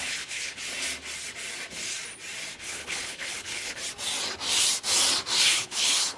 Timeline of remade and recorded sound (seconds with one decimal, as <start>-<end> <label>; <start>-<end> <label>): 0.0-0.6 remade; 0.6-2.5 recorded; 2.5-3.8 remade; 3.8-5.5 recorded; 5.5-6.2 remade